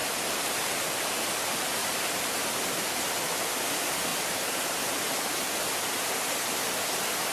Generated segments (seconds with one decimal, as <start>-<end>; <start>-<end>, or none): 0.0-0.8; 1.8-3.2; 4.1-4.8